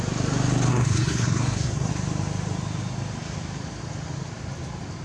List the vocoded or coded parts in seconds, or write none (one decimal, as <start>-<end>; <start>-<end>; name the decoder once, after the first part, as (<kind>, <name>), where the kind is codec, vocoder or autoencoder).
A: 0.7-1.9 (codec, SNAC)